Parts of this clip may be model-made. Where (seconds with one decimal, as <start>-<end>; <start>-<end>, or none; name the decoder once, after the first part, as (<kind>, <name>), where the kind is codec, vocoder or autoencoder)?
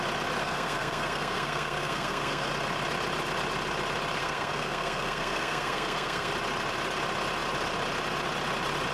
0.4-2.5 (codec, SNAC); 4.2-6.3